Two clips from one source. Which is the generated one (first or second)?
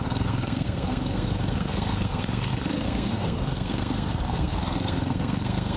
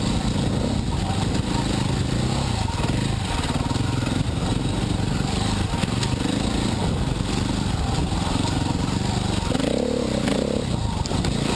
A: first